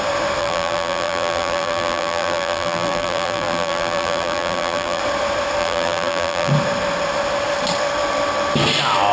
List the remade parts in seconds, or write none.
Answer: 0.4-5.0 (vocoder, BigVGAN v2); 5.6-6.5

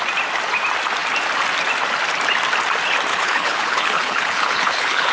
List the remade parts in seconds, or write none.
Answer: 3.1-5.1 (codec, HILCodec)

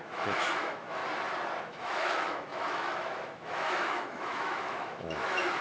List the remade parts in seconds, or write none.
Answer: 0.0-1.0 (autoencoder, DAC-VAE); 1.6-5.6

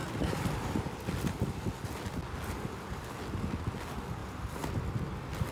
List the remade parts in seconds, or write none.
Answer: none